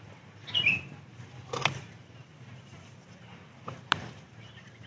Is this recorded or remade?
recorded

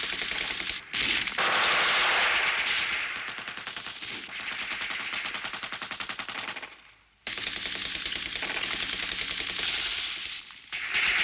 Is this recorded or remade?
recorded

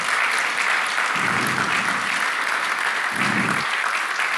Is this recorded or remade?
recorded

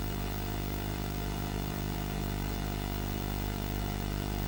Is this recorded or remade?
remade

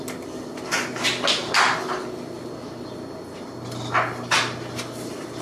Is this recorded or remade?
recorded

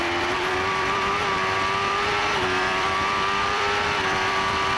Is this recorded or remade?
remade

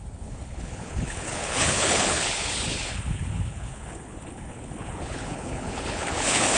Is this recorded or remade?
remade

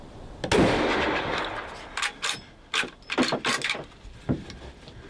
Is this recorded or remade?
recorded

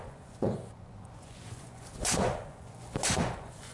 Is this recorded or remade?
remade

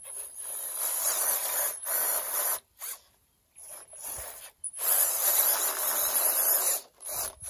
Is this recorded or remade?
remade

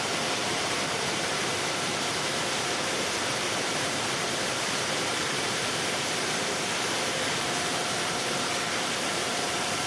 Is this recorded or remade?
remade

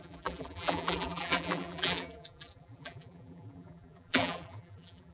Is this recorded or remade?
remade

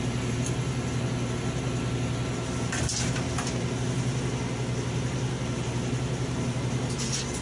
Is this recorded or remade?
recorded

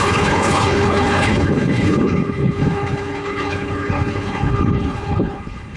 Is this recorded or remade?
remade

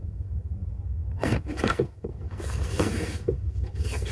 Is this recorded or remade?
remade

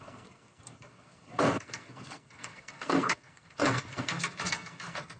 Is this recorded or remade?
remade